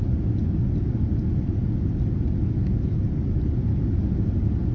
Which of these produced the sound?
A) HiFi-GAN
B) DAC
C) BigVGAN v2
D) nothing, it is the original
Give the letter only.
D